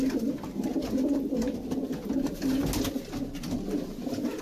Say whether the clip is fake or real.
real